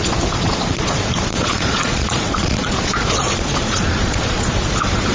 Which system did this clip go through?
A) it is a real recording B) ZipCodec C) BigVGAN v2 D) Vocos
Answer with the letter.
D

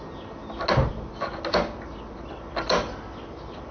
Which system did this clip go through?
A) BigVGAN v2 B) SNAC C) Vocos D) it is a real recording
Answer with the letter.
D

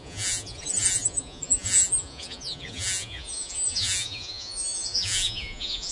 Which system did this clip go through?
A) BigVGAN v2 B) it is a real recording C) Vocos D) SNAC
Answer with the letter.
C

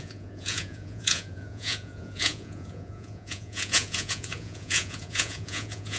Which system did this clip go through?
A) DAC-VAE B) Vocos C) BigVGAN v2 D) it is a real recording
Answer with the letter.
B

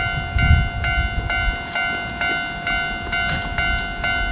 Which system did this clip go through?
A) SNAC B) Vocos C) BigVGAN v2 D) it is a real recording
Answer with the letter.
D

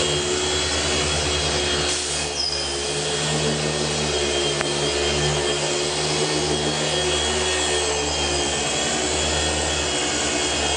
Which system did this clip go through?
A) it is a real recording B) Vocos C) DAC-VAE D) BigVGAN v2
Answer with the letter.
A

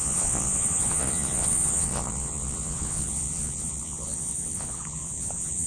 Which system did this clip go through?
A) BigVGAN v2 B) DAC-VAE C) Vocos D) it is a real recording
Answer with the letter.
C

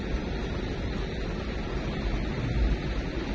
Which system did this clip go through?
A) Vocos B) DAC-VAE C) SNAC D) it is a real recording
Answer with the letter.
D